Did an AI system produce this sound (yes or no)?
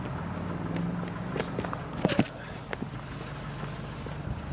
no